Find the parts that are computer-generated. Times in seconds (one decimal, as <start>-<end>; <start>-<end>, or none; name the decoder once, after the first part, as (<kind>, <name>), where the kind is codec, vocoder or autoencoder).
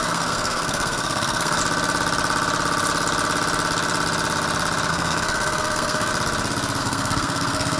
0.0-1.6 (codec, SNAC); 4.9-6.1; 6.8-7.8